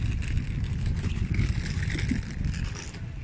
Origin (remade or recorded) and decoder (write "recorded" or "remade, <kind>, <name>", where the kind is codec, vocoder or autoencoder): remade, vocoder, BigVGAN v2